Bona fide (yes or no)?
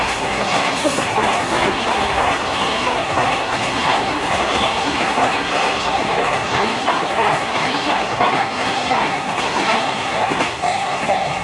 no